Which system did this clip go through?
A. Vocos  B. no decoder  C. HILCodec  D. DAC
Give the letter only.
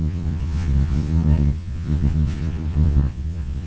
A